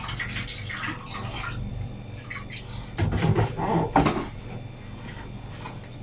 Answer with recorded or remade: recorded